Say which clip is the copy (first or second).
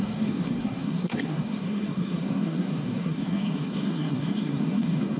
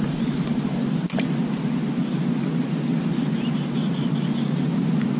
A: first